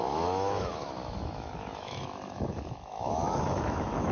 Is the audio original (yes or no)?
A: no